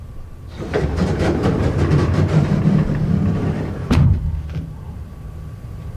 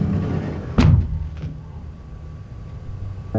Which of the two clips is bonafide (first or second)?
second